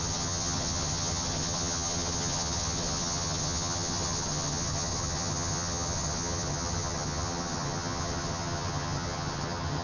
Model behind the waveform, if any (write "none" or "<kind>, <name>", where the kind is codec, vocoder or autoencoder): vocoder, HiFi-GAN